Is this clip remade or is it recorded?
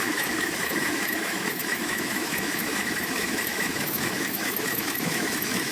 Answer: remade